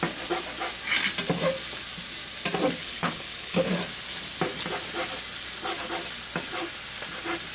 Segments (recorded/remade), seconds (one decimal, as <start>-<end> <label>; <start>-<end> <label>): 0.0-2.8 recorded; 2.8-3.7 remade; 3.7-7.5 recorded